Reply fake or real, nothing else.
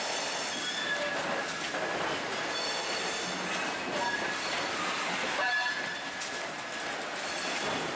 real